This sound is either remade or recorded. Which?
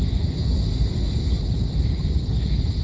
recorded